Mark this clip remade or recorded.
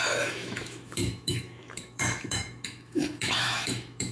remade